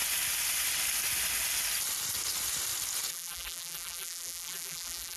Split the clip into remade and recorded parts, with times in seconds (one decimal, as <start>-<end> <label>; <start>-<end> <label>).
0.0-3.1 recorded; 3.1-5.2 remade